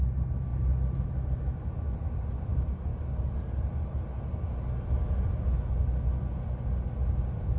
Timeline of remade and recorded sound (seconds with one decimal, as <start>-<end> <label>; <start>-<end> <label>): 0.0-7.6 recorded